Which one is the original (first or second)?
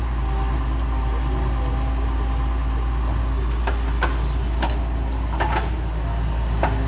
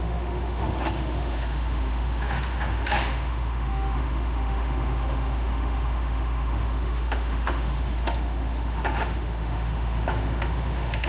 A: first